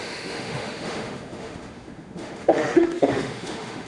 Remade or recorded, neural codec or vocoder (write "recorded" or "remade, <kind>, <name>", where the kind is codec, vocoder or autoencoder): remade, autoencoder, DAC-VAE